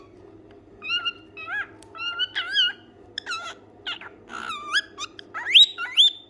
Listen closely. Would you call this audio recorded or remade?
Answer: recorded